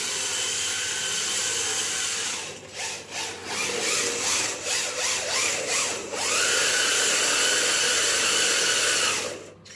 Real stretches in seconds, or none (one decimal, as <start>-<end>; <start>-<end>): 0.0-5.4; 7.6-9.8